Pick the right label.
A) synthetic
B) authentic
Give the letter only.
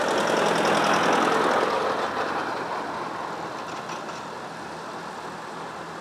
B